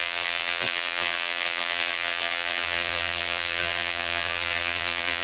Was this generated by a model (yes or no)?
yes